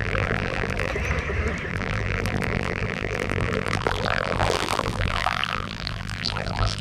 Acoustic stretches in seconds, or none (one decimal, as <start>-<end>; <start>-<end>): 0.9-1.7